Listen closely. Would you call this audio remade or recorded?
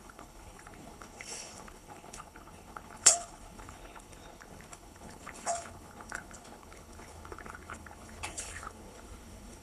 remade